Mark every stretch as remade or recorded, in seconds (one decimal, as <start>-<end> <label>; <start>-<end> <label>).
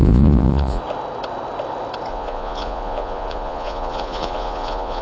0.0-0.8 remade; 0.8-2.1 recorded; 2.1-5.0 remade